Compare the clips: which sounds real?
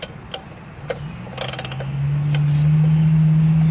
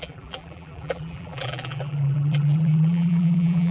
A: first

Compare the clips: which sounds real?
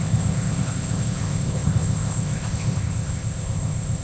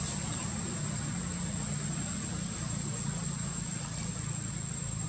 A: second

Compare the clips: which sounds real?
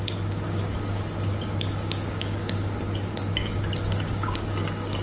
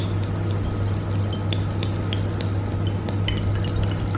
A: second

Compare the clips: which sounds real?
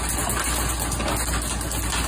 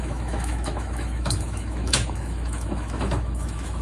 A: first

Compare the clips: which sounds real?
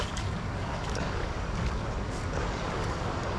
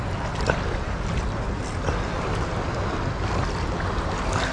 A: second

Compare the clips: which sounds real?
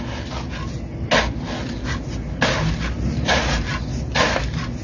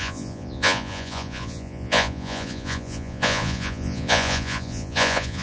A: first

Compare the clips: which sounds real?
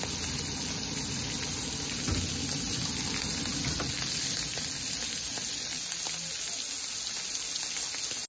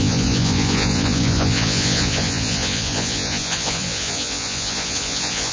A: first